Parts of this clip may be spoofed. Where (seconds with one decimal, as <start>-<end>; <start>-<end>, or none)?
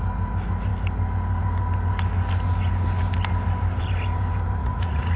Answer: 4.6-5.2